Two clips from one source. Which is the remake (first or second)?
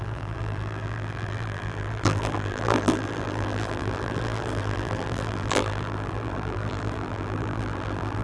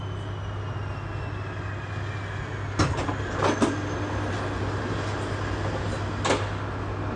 first